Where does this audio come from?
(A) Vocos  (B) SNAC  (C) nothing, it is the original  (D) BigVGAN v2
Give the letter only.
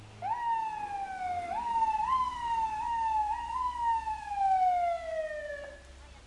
C